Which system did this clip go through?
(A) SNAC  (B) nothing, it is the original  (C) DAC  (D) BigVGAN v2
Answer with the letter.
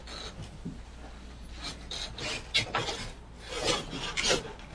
B